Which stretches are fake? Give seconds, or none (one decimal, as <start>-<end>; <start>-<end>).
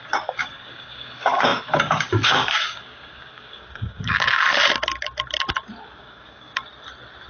0.0-4.6; 6.0-6.5